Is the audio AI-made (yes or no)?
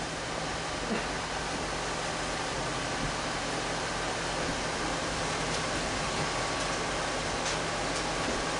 no